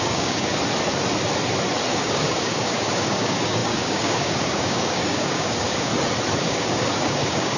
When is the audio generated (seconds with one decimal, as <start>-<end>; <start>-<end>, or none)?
0.0-0.5; 1.9-5.9; 6.4-7.6